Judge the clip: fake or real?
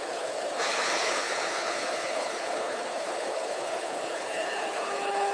fake